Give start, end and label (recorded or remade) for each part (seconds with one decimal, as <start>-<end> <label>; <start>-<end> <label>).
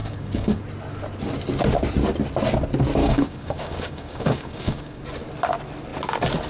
0.0-0.6 remade; 0.6-3.0 recorded; 3.0-5.0 remade; 5.0-6.5 recorded